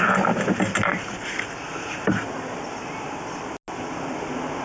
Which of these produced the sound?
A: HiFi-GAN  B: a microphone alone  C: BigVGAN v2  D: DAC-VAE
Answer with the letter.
B